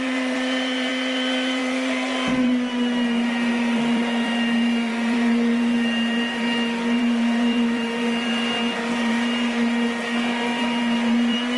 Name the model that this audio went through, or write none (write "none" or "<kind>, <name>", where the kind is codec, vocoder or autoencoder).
vocoder, BigVGAN v2